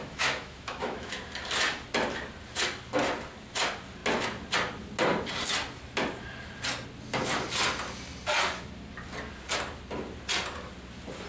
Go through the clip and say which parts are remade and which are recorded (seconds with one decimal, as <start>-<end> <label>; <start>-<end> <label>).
0.0-1.2 remade; 1.2-11.3 recorded